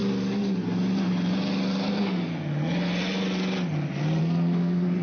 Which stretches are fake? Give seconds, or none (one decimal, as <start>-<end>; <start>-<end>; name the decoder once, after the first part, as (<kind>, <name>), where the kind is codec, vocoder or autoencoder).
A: 1.9-2.3 (codec, SNAC); 4.2-5.0